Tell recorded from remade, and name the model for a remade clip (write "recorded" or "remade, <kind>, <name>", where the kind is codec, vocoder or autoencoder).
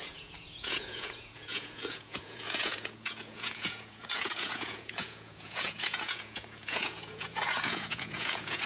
remade, vocoder, Vocos